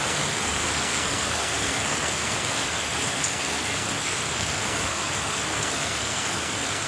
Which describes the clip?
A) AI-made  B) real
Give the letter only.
A